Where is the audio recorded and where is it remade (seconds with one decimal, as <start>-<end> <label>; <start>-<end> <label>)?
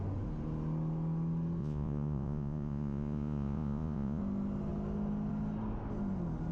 0.0-1.6 recorded; 1.6-4.2 remade; 4.2-6.5 recorded